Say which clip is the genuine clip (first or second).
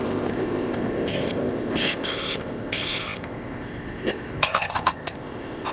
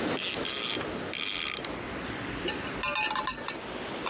second